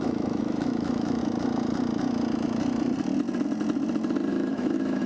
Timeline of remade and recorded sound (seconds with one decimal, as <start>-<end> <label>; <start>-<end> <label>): 0.0-1.2 remade; 1.2-4.3 recorded; 4.3-5.1 remade